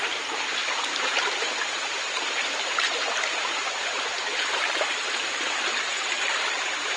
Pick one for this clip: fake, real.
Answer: fake